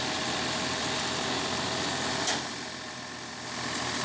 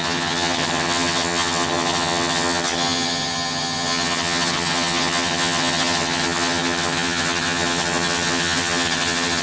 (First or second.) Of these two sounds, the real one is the first